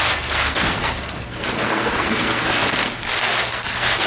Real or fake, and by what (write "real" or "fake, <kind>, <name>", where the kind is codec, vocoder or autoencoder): fake, codec, SNAC